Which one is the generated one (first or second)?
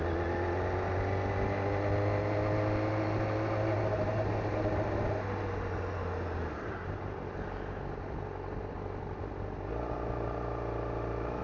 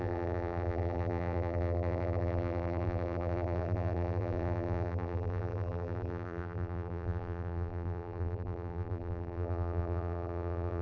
second